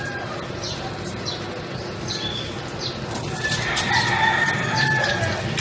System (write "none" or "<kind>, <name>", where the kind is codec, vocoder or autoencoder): none